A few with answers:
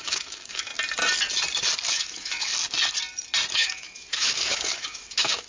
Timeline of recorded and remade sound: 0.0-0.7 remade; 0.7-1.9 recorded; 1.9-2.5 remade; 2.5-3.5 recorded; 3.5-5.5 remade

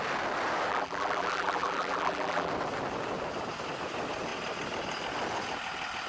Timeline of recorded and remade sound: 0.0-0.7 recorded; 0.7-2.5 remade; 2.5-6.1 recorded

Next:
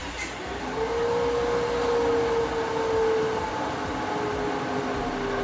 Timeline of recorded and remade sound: 0.0-5.4 recorded

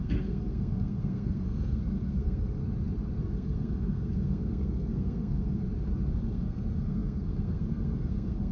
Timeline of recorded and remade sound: 0.0-2.6 remade; 2.6-3.2 recorded; 3.2-5.6 remade; 5.6-6.1 recorded; 6.1-8.5 remade